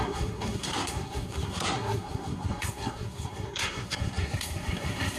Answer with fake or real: fake